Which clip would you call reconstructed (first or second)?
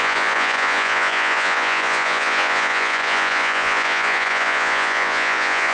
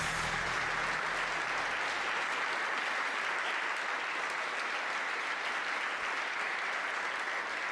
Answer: first